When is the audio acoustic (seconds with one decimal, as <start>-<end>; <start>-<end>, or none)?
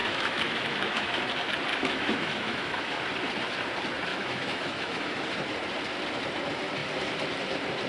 1.2-1.7; 3.0-4.1; 5.3-7.9